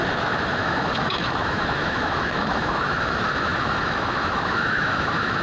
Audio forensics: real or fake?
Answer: fake